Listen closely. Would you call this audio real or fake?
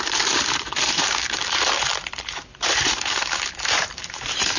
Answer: fake